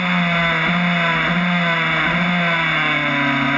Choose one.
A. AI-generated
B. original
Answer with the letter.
B